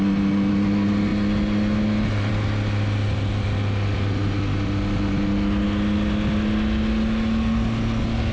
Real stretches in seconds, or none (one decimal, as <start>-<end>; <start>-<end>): 0.0-8.3